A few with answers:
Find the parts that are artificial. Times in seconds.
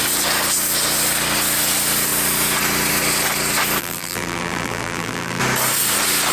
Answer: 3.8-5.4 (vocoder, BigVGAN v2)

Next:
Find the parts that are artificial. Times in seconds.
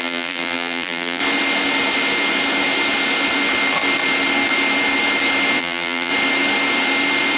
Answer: 0.0-1.2 (vocoder, BigVGAN v2); 5.6-6.1